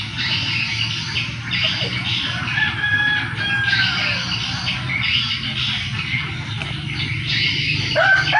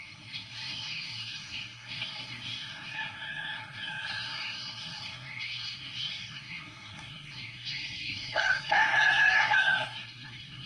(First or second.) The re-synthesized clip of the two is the second